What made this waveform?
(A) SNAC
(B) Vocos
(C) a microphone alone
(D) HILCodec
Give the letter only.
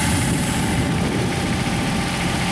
C